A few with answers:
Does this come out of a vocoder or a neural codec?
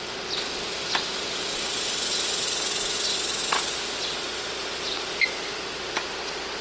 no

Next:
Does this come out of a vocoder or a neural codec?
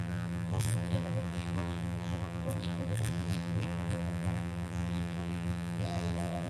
yes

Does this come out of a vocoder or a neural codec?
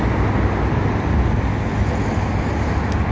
no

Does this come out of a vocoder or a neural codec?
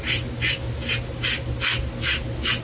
no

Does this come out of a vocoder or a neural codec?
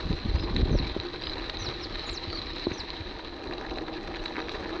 no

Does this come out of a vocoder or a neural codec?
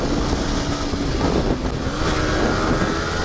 no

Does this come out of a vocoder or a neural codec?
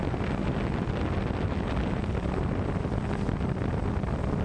no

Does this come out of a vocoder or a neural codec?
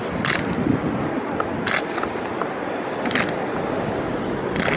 no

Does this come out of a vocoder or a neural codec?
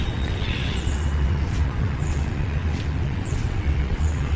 yes